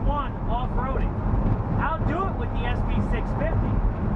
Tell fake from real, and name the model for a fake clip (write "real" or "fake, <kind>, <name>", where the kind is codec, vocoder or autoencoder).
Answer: real